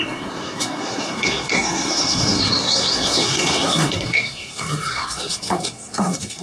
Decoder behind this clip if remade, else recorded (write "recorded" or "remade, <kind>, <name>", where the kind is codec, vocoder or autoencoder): remade, codec, SNAC